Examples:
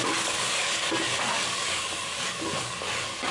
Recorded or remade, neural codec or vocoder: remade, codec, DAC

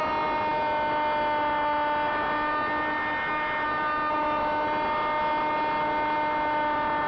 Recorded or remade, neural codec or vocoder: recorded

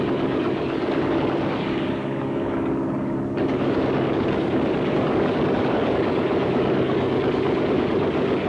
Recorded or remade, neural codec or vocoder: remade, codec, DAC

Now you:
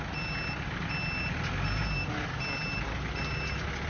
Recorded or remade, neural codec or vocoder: recorded